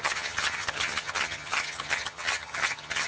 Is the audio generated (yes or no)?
yes